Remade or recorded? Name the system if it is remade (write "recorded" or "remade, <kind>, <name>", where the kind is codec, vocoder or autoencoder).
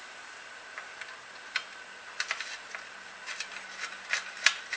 recorded